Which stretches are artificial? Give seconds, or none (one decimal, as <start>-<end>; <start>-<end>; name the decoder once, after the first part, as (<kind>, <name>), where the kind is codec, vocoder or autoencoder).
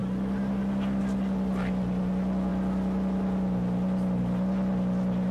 none